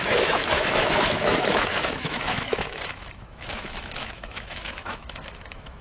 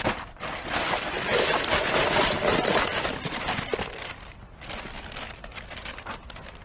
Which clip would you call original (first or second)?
second